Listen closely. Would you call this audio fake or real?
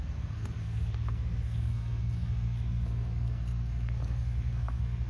fake